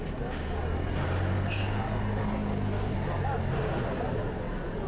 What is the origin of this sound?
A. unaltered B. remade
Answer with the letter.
A